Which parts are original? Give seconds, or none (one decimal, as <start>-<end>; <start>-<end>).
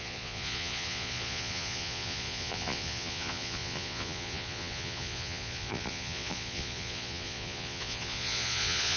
none